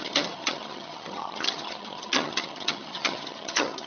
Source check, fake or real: fake